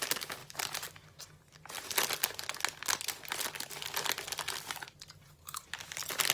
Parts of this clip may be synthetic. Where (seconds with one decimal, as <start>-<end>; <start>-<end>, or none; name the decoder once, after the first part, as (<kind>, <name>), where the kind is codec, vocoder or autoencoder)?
none